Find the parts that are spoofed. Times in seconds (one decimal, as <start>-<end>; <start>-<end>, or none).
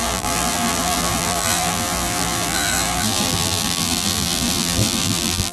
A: 0.0-5.5